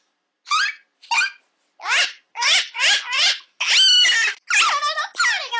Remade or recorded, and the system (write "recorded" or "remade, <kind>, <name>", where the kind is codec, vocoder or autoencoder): recorded